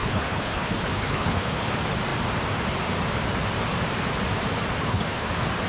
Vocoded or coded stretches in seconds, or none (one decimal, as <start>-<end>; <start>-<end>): 0.0-1.7; 4.8-5.3